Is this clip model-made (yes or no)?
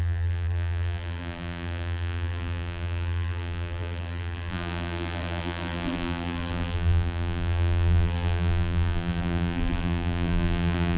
yes